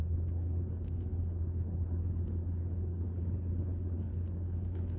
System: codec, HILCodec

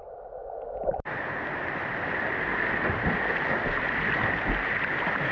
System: none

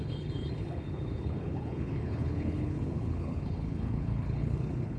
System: codec, HILCodec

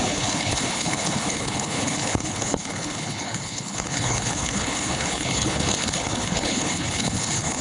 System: codec, HILCodec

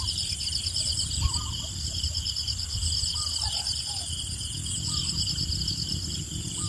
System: none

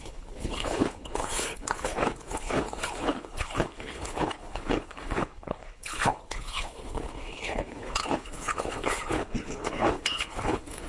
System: codec, HILCodec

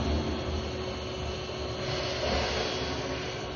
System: none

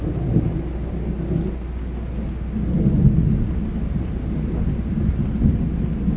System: none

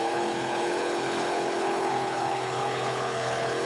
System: codec, HILCodec